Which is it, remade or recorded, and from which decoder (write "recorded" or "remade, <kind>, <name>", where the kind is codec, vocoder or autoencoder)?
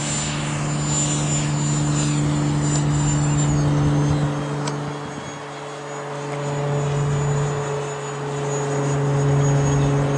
recorded